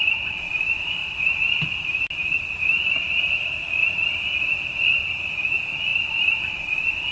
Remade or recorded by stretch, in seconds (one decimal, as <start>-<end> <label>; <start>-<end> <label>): 0.0-1.0 remade; 1.0-1.8 recorded; 1.8-7.1 remade